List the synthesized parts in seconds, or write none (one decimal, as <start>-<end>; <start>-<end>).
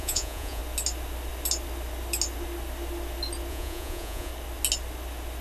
0.0-0.6; 3.5-4.3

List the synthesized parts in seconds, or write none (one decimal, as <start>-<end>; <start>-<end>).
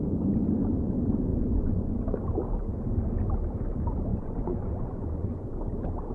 1.3-2.0; 4.1-5.6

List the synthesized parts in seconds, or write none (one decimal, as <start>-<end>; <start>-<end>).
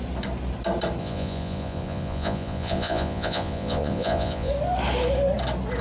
1.0-4.5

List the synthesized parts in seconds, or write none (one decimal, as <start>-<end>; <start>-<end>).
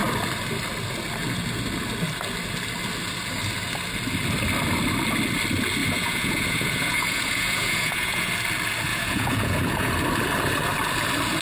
5.8-8.3; 8.9-9.9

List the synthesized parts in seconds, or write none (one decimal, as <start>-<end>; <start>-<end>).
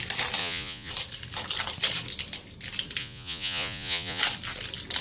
0.4-0.9; 3.0-4.2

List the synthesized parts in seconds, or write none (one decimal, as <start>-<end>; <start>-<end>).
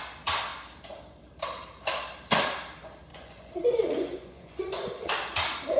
3.1-5.1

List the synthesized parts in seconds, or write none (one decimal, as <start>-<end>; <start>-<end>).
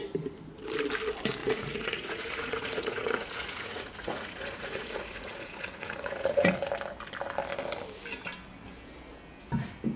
1.4-6.5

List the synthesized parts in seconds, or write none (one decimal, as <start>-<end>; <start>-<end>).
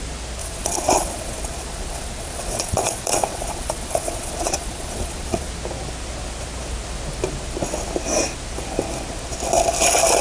0.4-5.5